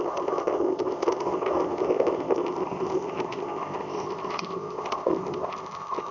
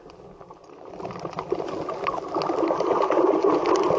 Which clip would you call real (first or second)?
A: second